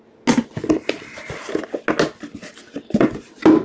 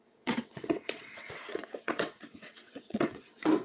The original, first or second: first